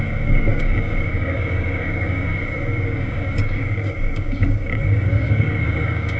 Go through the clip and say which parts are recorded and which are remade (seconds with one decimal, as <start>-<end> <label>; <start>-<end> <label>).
0.0-6.2 remade